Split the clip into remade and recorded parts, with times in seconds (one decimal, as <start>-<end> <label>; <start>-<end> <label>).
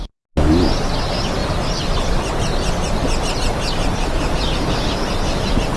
0.0-5.8 recorded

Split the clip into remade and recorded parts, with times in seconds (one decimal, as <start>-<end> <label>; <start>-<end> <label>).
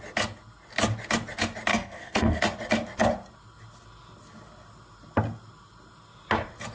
0.0-1.7 recorded; 1.7-2.4 remade; 2.4-6.7 recorded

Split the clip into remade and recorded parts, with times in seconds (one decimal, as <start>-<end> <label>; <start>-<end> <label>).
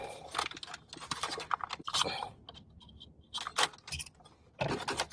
0.0-5.1 recorded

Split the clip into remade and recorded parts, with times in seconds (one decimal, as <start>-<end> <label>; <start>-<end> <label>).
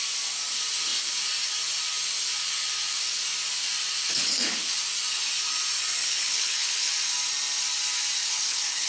0.0-4.1 recorded; 4.1-4.8 remade; 4.8-6.0 recorded; 6.0-6.9 remade; 6.9-8.2 recorded; 8.2-8.9 remade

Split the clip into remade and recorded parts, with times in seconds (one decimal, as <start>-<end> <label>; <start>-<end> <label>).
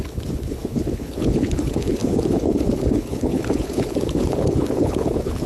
0.0-5.5 remade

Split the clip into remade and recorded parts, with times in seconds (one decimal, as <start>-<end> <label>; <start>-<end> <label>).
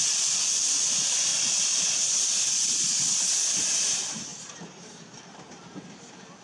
0.0-1.3 recorded; 1.3-2.5 remade; 2.5-4.3 recorded; 4.3-5.2 remade; 5.2-6.4 recorded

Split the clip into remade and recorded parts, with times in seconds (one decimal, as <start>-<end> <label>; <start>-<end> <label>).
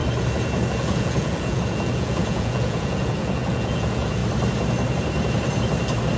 0.0-0.7 recorded; 0.7-4.2 remade; 4.2-6.2 recorded